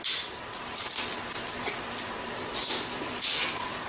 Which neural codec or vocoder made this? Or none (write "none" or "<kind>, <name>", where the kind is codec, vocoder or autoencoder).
none